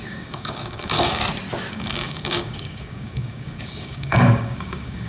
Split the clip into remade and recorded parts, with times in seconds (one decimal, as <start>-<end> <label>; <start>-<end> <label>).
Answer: 0.0-1.2 remade; 1.2-1.7 recorded; 1.7-5.1 remade